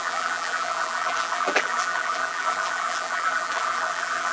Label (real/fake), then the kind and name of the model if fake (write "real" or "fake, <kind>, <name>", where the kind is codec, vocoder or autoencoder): fake, vocoder, BigVGAN v2